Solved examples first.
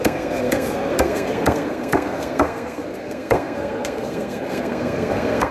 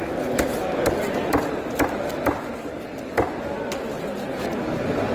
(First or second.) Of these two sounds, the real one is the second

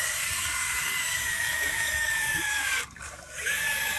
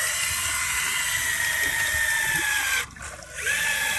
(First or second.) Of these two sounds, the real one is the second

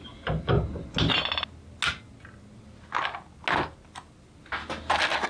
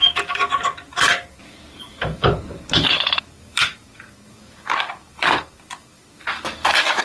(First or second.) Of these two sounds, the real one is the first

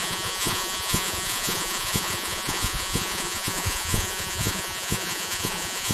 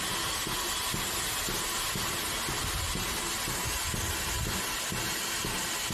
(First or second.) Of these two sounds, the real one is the second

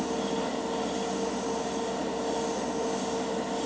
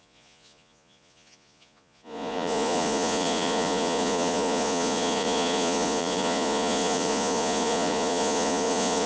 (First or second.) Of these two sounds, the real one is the first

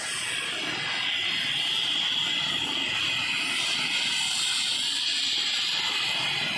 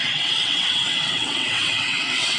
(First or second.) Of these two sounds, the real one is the first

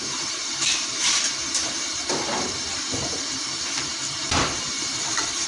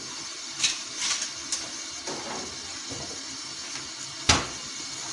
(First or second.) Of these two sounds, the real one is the second